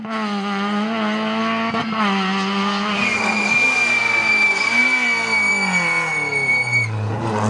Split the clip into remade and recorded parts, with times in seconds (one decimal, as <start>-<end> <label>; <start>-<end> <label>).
0.0-7.5 recorded